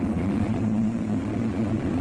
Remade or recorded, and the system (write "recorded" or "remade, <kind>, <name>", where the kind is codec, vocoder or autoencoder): remade, vocoder, Vocos